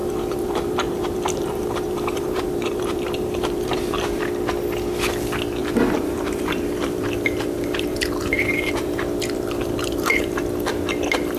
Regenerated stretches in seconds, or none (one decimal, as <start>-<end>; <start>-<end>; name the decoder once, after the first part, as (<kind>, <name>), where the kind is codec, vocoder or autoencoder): 0.0-4.2 (vocoder, BigVGAN v2); 5.6-10.4